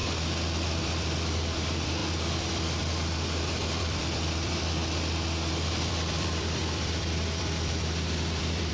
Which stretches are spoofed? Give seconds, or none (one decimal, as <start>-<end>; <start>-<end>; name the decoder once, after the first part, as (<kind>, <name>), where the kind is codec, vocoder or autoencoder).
0.8-4.8 (vocoder, BigVGAN v2); 5.9-8.7